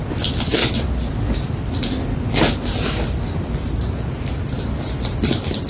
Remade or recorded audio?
recorded